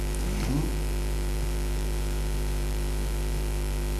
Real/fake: fake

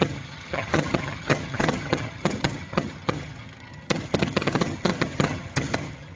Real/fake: fake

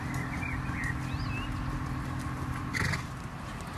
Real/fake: real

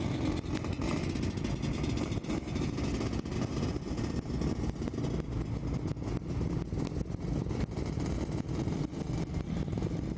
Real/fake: real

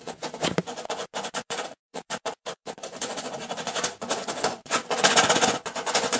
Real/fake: fake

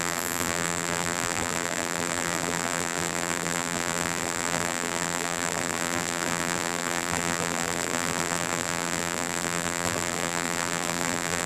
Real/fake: fake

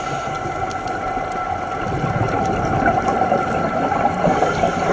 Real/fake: real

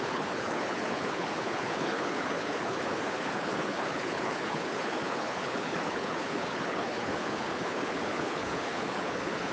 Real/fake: fake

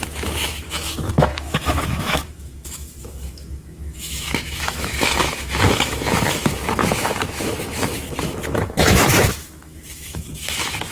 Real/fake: fake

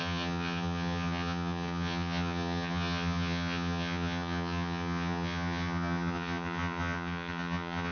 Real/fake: fake